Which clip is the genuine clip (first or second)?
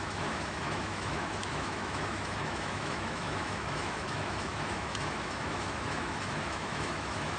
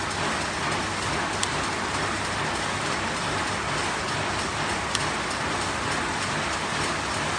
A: second